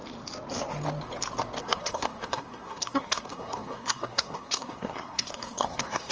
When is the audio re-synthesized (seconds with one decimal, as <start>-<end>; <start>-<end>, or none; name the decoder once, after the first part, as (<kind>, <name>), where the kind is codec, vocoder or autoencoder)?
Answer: 1.6-6.1 (codec, SNAC)